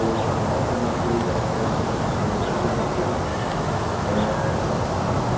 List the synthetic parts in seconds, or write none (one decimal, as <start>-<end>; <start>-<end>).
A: 0.8-1.8; 3.3-4.1